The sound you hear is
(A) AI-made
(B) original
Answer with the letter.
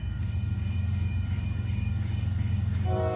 A